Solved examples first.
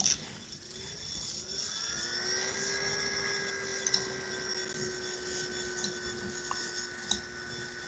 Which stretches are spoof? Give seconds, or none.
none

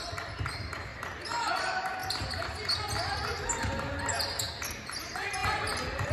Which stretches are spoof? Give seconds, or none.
none

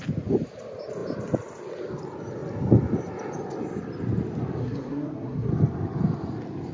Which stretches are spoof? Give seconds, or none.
4.6-5.5 (codec, SNAC)

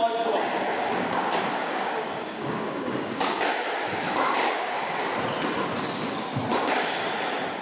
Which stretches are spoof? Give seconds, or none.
0.7-5.0 (codec, DAC); 6.5-7.1